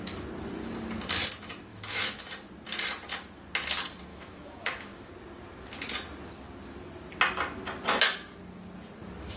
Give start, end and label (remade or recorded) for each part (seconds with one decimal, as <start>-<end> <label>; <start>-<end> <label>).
0.0-1.7 recorded; 1.7-2.2 remade; 2.2-4.1 recorded; 4.1-5.1 remade; 5.1-9.4 recorded